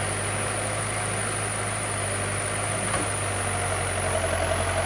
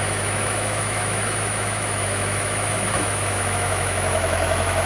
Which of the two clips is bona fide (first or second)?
first